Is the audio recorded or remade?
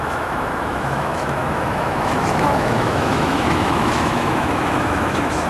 remade